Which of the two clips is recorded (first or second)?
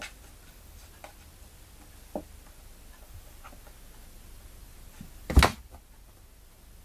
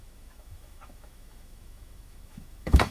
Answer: first